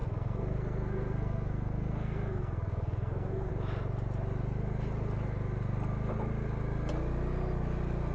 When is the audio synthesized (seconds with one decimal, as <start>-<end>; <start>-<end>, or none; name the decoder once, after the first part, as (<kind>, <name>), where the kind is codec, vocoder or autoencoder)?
0.0-3.5 (codec, SNAC)